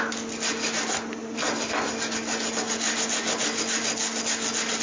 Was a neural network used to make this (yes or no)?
no